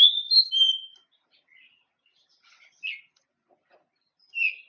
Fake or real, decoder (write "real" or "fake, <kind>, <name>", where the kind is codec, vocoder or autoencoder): real